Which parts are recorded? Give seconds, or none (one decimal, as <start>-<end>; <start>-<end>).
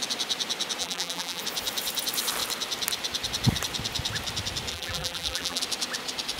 0.0-0.8; 1.4-4.7; 5.6-6.4